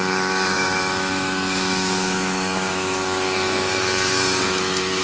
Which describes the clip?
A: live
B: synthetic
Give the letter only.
B